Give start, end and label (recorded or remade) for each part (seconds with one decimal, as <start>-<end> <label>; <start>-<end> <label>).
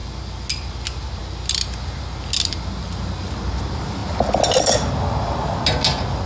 0.0-6.3 recorded